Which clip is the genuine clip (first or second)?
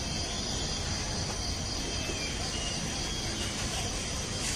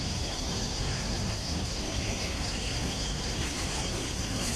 first